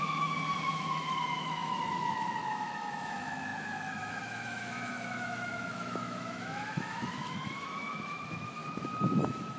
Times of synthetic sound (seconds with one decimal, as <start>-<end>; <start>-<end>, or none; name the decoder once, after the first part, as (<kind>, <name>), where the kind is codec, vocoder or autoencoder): 0.0-8.6 (autoencoder, DAC-VAE); 9.2-9.6